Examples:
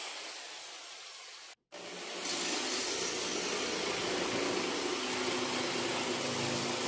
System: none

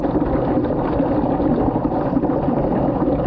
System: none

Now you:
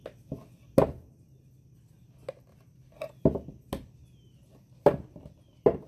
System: none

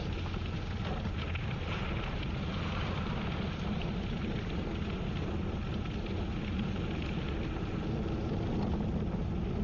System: none